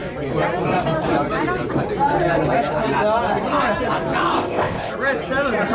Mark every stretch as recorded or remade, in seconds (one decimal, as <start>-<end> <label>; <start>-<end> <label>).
0.0-4.3 recorded; 4.3-4.9 remade; 4.9-5.7 recorded